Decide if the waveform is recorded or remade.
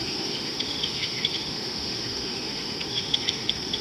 remade